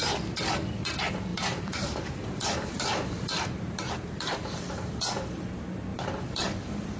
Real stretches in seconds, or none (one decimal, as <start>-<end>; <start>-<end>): 0.0-1.3; 5.5-5.9